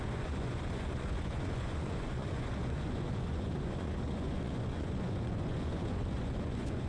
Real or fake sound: fake